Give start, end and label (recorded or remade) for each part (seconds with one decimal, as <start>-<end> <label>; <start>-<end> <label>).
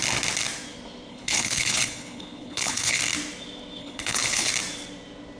0.0-1.1 recorded; 1.1-3.0 remade; 3.0-3.8 recorded; 3.8-4.5 remade; 4.5-5.4 recorded